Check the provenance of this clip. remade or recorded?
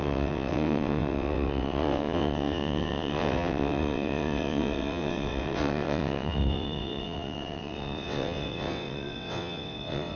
remade